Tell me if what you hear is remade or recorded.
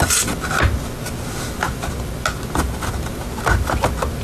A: recorded